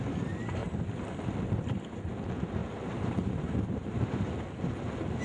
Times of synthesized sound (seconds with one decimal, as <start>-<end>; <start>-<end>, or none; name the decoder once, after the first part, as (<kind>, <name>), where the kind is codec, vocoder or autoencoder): 2.6-4.3 (vocoder, BigVGAN v2)